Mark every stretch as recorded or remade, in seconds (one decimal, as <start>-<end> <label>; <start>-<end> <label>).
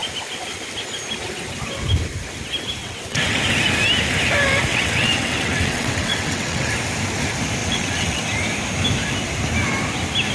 0.0-2.8 recorded; 2.8-3.4 remade; 3.4-4.7 recorded; 4.7-6.7 remade; 6.7-7.6 recorded; 7.6-8.2 remade; 8.2-10.3 recorded